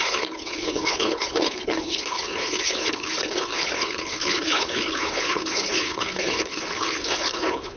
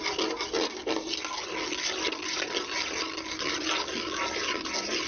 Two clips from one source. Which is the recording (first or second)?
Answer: second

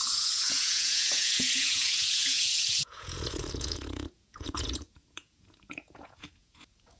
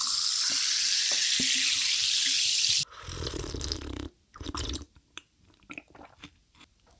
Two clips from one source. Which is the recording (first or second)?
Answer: second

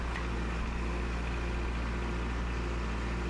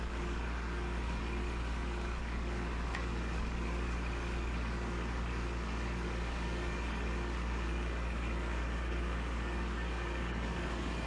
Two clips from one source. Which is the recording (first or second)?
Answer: first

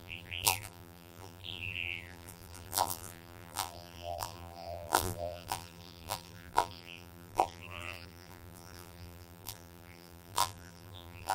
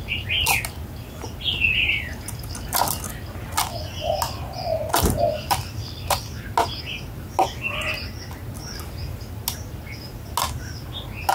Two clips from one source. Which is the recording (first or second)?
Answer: second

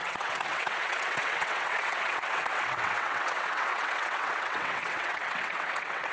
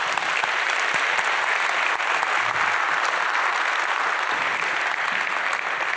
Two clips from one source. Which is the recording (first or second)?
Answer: second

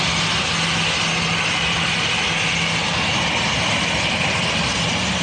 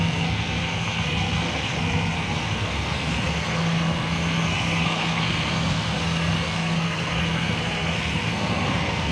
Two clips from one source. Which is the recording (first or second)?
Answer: first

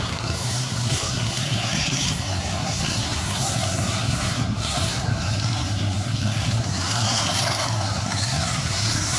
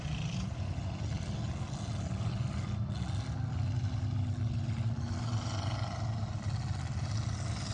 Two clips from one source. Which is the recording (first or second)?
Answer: second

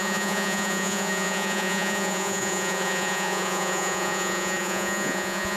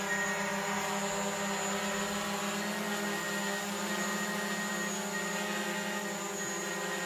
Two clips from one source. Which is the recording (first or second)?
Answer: second